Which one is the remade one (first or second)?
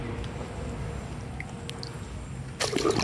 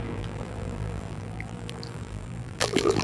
second